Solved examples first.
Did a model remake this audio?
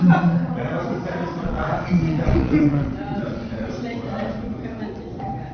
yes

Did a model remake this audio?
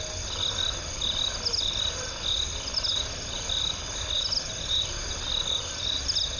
no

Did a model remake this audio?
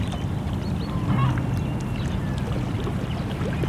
no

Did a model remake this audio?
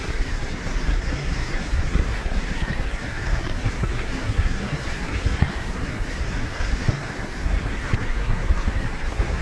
yes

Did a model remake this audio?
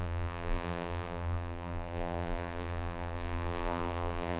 yes